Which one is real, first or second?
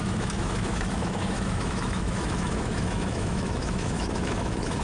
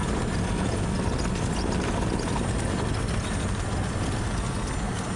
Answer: second